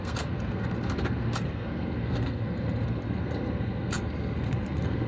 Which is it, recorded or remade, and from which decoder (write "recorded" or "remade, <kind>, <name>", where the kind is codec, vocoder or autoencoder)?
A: remade, codec, SNAC